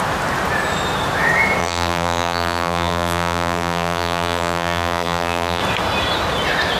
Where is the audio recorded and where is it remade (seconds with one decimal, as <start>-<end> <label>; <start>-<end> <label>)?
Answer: 0.0-1.6 recorded; 1.6-5.6 remade; 5.6-6.8 recorded